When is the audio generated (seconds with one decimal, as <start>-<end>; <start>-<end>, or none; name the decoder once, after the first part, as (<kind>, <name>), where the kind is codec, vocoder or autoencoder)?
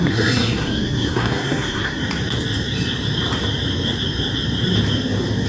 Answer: 0.0-2.0 (codec, SNAC)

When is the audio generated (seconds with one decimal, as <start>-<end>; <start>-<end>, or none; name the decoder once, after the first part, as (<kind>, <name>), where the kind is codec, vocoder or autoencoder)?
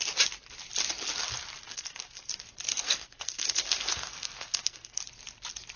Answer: 1.7-2.3 (codec, SNAC); 2.7-5.0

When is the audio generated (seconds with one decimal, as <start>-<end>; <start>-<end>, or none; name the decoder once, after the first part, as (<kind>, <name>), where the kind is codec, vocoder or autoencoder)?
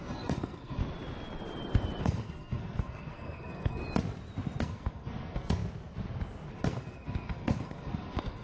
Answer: 0.0-0.8 (codec, SNAC); 2.0-3.8; 4.6-5.6; 6.5-8.4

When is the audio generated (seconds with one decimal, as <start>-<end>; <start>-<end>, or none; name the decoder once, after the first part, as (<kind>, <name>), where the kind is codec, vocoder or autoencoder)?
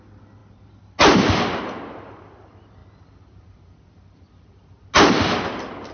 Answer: none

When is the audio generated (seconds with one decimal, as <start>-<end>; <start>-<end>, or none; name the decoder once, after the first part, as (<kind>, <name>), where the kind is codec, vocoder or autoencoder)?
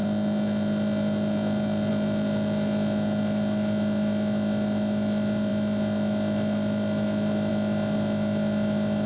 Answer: none